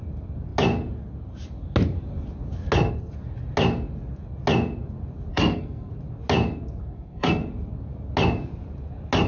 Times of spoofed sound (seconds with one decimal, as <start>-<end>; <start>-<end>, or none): 5.3-5.9; 6.8-7.4